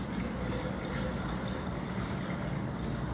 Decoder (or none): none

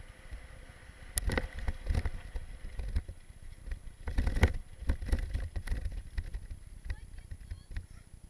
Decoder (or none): none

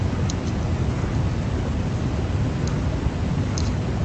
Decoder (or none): none